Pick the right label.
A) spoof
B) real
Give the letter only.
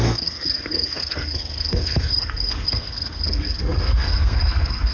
A